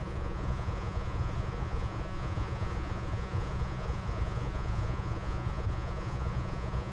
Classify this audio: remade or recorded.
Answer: remade